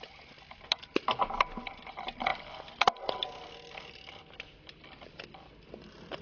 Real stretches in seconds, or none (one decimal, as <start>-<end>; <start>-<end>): 0.0-6.2